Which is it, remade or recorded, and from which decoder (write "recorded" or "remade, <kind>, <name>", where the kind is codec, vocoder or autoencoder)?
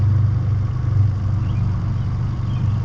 recorded